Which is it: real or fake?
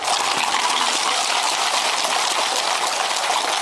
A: real